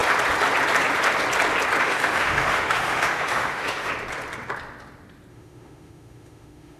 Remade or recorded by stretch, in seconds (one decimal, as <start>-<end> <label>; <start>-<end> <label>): 0.0-1.8 recorded; 1.8-3.9 remade; 3.9-5.3 recorded; 5.3-6.8 remade